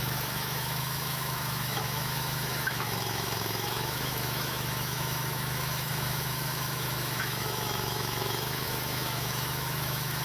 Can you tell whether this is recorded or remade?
remade